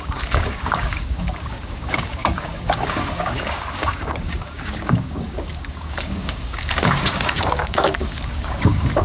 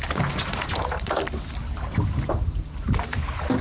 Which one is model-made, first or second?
first